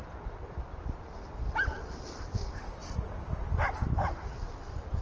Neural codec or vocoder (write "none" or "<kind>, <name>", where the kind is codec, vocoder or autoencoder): none